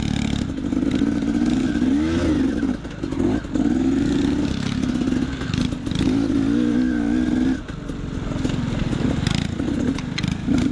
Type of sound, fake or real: real